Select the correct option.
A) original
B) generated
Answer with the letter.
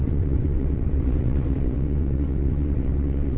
B